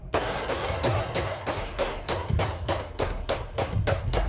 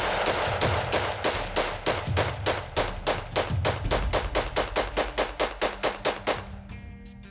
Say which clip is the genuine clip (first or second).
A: second